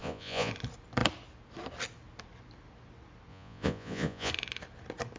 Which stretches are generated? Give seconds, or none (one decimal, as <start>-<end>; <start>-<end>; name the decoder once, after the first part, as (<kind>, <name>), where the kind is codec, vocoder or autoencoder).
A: 0.0-0.5 (vocoder, Vocos); 3.3-4.3